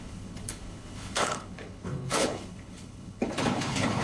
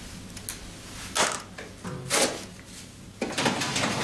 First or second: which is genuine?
second